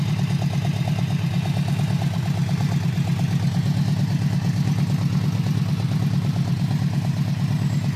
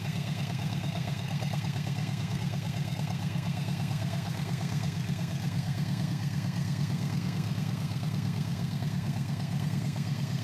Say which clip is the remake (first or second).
second